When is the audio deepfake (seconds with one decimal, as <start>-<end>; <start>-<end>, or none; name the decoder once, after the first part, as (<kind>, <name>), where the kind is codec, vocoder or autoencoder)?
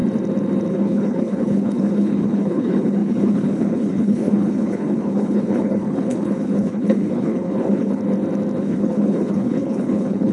0.7-8.0 (codec, HILCodec); 8.6-10.3